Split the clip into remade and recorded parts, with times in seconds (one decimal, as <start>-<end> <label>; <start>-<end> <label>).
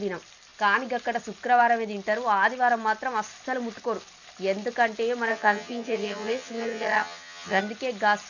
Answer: 0.0-5.3 recorded; 5.3-7.6 remade; 7.6-8.3 recorded